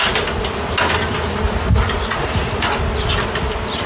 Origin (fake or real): real